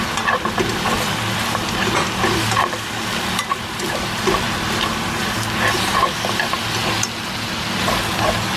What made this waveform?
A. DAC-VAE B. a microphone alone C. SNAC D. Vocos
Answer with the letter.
B